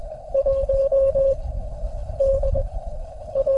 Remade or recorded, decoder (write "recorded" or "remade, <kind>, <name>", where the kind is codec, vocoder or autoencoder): remade, codec, HILCodec